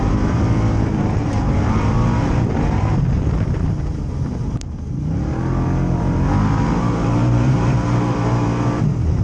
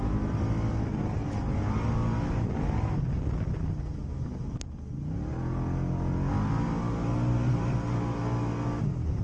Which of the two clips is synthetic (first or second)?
first